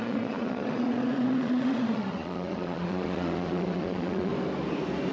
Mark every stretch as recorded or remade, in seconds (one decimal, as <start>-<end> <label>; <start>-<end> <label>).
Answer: 0.0-4.3 remade; 4.3-5.1 recorded